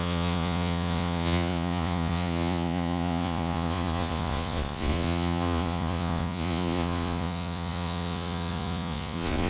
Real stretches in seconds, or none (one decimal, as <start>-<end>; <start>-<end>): none

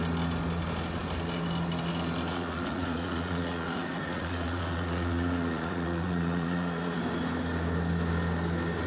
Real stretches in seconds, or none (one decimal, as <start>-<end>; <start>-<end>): 0.0-2.3; 7.0-8.9

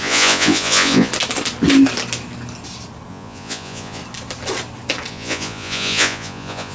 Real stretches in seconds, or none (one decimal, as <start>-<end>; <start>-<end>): 1.1-3.1; 4.0-5.1

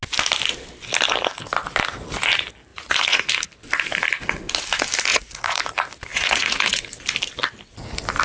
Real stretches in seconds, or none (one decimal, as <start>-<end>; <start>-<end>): 0.0-2.7; 3.3-5.1; 5.6-6.1; 6.8-8.2